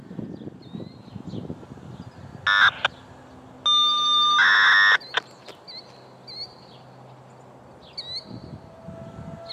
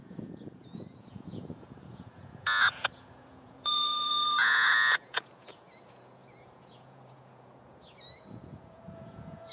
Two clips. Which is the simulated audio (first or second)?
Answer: second